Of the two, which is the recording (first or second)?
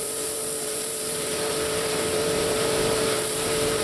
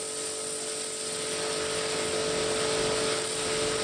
second